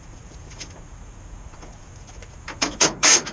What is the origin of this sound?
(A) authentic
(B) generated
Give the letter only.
B